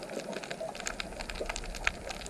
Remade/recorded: recorded